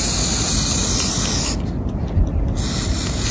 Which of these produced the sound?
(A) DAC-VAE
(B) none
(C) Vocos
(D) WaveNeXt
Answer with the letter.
B